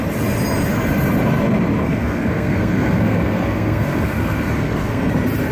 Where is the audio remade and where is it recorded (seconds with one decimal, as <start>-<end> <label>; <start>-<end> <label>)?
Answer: 0.0-1.8 recorded; 1.8-5.1 remade; 5.1-5.5 recorded